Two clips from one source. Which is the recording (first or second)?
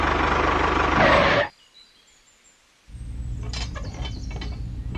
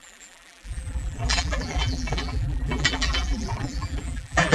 first